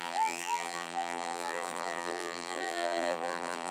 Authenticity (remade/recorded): remade